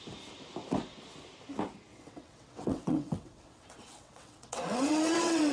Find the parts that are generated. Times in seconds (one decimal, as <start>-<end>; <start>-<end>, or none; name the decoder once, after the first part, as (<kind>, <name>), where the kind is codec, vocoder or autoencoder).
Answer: 1.9-5.5 (vocoder, WaveNeXt)